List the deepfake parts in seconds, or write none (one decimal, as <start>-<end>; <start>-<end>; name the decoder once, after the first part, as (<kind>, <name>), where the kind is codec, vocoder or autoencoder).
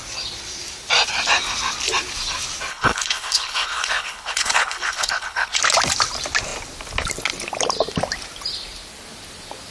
2.7-5.6 (codec, HILCodec)